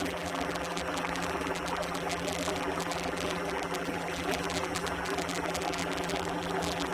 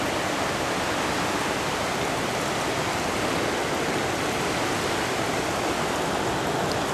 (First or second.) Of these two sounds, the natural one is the second